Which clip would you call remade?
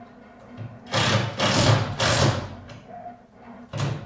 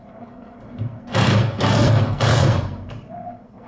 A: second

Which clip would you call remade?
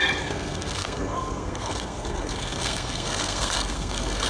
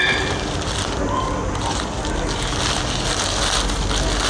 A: first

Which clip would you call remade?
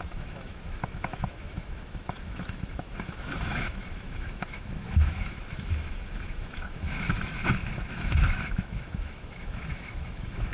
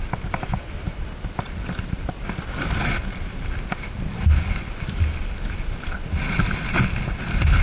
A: first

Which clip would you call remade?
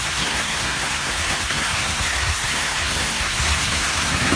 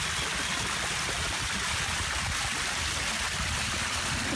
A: first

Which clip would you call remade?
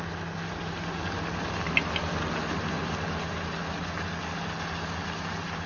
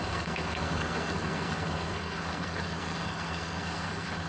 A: second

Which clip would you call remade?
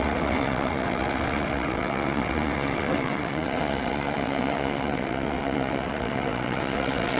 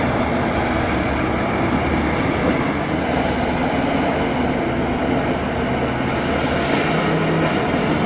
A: first